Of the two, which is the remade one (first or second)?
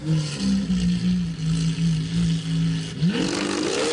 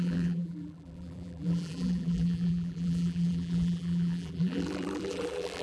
second